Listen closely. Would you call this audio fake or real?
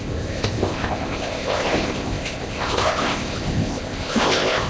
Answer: fake